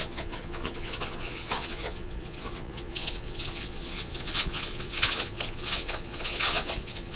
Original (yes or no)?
no